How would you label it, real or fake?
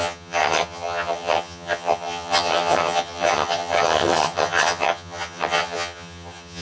fake